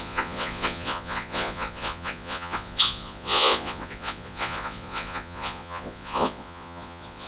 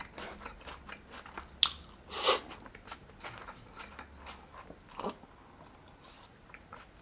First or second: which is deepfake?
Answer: first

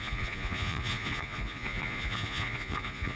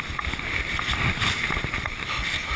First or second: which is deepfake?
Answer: first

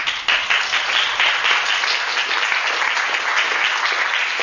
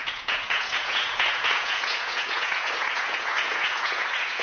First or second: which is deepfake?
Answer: second